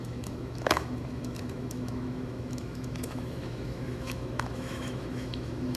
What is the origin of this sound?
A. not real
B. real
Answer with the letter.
A